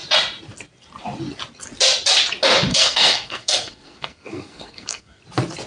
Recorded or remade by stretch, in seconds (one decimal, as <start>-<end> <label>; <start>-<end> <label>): 0.0-2.7 recorded; 2.7-5.2 remade; 5.2-5.7 recorded